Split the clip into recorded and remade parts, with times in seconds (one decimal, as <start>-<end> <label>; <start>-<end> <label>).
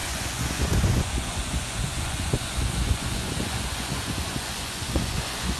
0.0-5.6 remade